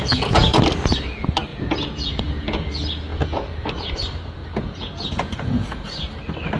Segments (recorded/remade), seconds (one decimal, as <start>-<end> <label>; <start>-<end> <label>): 0.0-0.6 remade; 0.6-1.5 recorded; 1.5-2.7 remade; 2.7-3.1 recorded; 3.1-3.9 remade; 3.9-4.4 recorded; 4.4-5.9 remade; 5.9-6.6 recorded